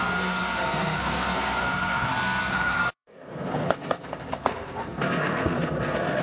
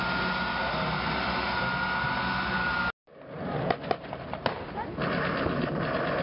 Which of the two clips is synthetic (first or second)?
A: first